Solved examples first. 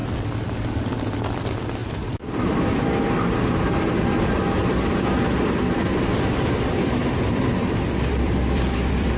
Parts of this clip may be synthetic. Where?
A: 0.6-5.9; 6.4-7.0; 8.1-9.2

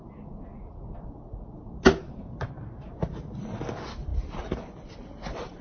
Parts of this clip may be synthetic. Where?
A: none

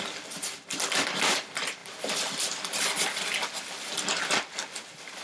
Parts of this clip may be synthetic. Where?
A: 0.0-1.8; 4.8-5.2

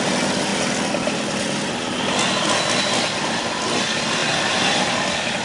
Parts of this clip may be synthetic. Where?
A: 0.5-1.4

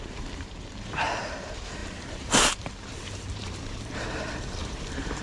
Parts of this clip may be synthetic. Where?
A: 0.0-5.2

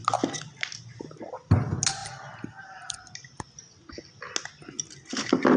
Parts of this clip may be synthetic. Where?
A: none

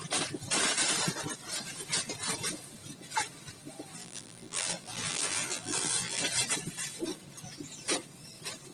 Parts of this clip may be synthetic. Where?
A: 4.0-6.2

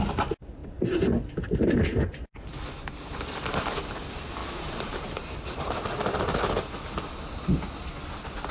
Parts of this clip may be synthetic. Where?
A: 4.4-5.6